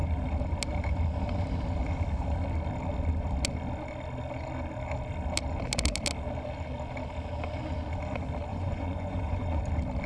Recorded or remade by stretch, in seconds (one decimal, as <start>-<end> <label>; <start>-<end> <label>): 0.0-8.5 recorded; 8.5-9.6 remade; 9.6-10.1 recorded